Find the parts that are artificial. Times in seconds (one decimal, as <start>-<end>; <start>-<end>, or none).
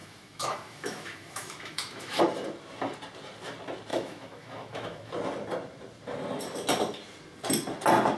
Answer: 0.0-2.2; 3.9-5.1